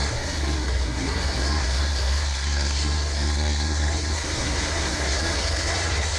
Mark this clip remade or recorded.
remade